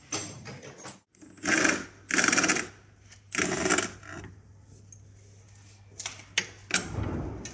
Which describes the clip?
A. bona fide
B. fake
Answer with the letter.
A